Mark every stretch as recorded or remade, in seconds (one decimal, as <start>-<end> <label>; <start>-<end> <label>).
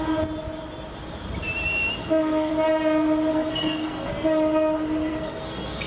0.0-2.0 recorded; 2.0-2.5 remade; 2.5-3.3 recorded; 3.3-4.1 remade; 4.1-5.1 recorded; 5.1-5.9 remade